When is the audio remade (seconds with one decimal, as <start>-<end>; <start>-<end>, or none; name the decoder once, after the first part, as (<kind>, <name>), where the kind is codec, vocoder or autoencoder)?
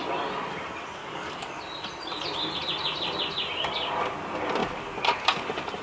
1.0-1.6 (codec, DAC)